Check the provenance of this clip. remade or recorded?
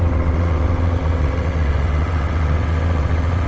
remade